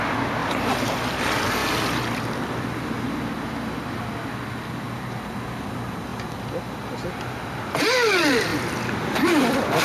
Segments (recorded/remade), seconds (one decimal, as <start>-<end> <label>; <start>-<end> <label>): 0.0-0.4 recorded; 0.4-0.9 remade; 0.9-1.6 recorded; 1.6-2.3 remade; 2.3-6.1 recorded; 6.1-7.6 remade; 7.6-9.8 recorded